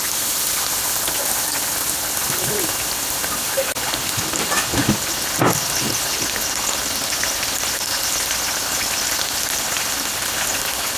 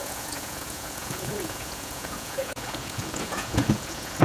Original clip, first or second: first